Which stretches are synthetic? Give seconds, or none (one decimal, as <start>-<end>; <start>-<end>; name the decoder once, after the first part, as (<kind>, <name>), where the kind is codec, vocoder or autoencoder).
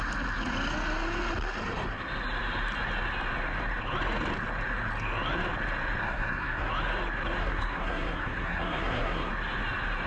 6.0-6.7 (codec, SNAC); 7.4-9.3